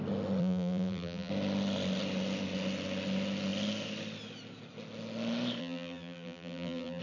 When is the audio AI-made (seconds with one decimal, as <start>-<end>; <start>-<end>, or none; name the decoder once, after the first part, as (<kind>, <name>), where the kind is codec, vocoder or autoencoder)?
0.4-1.3 (vocoder, BigVGAN v2); 5.6-7.0